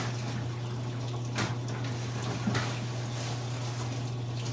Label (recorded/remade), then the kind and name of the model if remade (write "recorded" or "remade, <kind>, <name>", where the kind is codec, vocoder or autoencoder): recorded